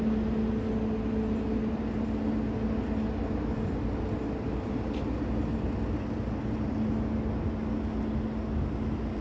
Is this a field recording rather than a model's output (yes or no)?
yes